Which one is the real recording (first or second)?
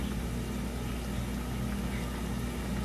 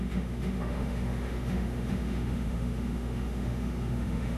first